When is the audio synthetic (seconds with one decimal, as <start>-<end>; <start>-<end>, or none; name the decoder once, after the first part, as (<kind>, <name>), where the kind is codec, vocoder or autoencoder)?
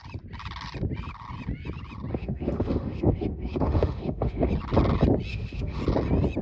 2.1-4.5 (autoencoder, DAC-VAE); 5.3-5.8